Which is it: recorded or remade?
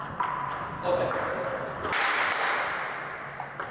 recorded